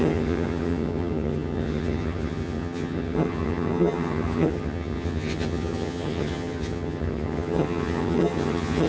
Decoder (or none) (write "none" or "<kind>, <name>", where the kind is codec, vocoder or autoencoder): vocoder, HiFi-GAN